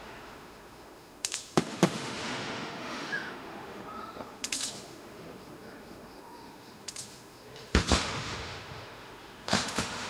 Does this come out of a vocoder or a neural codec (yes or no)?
yes